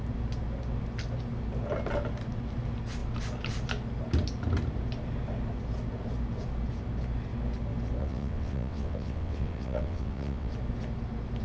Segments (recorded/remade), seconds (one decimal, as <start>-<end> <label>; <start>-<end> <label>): 0.0-8.0 recorded; 8.0-10.5 remade; 10.5-11.4 recorded